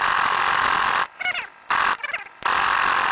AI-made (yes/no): no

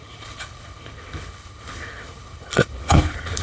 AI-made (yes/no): yes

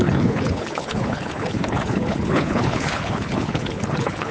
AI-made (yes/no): yes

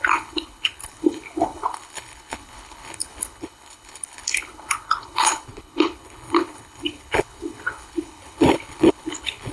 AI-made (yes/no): yes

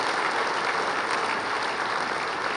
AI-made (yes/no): no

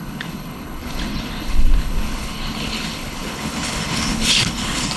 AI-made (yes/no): yes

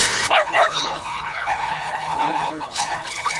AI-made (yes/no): yes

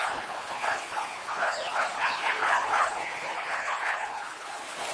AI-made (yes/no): yes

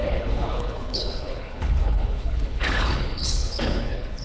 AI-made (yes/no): yes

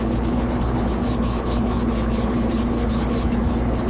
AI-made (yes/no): yes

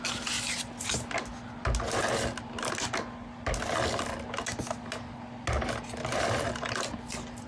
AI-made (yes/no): no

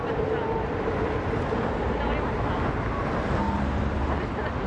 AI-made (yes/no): no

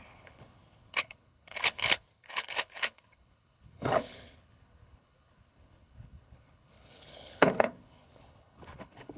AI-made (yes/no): yes